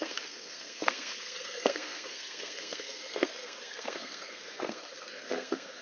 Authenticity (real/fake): fake